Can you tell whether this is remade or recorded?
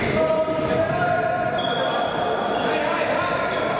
recorded